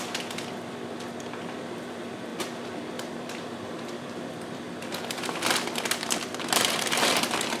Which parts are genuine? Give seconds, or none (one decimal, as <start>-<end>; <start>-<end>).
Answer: none